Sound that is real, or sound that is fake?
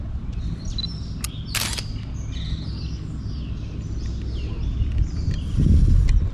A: real